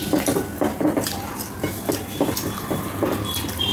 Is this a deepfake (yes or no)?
yes